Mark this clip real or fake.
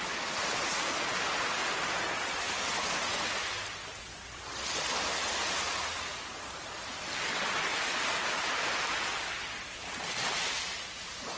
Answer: real